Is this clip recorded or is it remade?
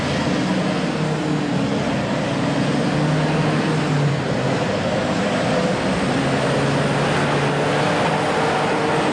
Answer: recorded